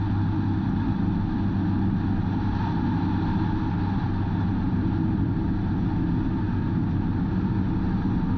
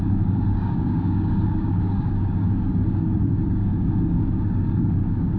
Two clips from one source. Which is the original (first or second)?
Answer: first